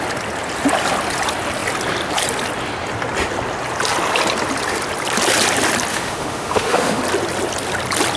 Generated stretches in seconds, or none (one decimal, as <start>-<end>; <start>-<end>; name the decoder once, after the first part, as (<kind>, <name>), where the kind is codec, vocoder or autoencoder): 5.9-7.0 (autoencoder, DAC-VAE)